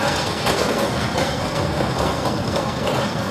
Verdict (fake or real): fake